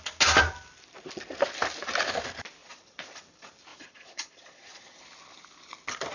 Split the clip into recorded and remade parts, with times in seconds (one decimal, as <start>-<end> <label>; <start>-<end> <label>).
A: 0.0-2.6 recorded; 2.6-3.2 remade; 3.2-3.7 recorded; 3.7-5.0 remade; 5.0-6.1 recorded